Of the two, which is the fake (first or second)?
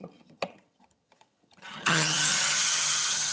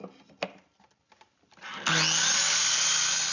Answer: first